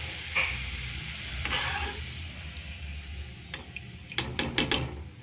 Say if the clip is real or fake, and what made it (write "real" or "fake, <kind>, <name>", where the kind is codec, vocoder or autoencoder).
real